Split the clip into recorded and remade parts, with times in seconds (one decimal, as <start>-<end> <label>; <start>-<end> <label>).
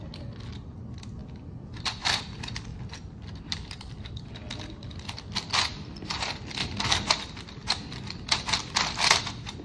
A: 0.0-1.2 recorded; 1.2-2.2 remade; 2.2-2.7 recorded; 2.7-4.3 remade; 4.3-6.6 recorded; 6.6-7.1 remade; 7.1-7.6 recorded; 7.6-8.6 remade; 8.6-9.6 recorded